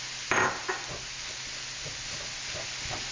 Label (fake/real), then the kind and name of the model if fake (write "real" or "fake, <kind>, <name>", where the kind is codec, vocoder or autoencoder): real